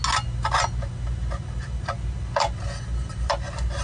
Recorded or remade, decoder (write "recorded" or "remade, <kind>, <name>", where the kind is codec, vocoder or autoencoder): recorded